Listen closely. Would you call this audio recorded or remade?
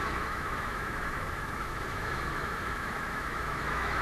remade